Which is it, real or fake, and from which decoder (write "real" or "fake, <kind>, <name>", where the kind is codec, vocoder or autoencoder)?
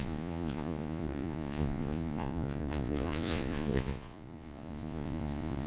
fake, vocoder, Vocos